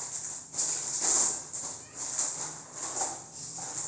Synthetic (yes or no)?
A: no